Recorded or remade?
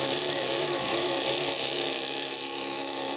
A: remade